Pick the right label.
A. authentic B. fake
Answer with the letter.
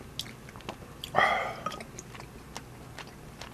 A